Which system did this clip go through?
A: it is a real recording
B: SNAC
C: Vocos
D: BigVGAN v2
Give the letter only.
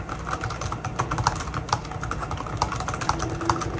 A